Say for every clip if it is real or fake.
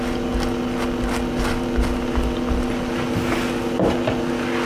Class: real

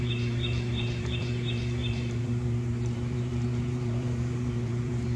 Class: fake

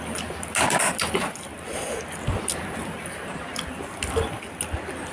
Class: real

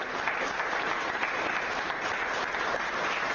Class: real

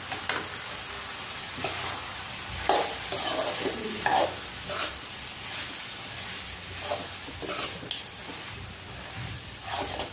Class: real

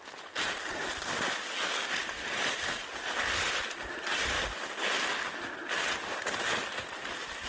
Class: real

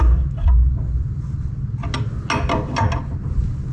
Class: real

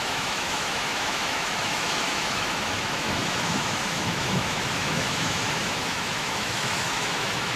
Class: fake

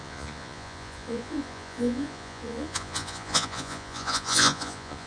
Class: fake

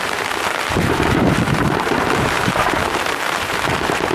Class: fake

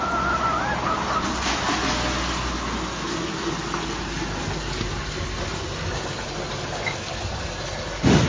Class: real